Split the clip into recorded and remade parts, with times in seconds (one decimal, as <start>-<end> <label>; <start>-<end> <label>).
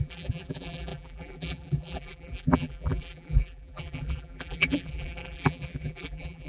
0.0-6.5 remade